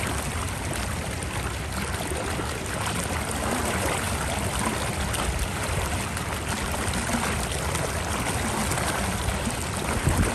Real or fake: real